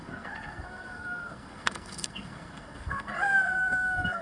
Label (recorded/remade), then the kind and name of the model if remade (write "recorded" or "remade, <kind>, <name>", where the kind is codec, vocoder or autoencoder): remade, codec, SNAC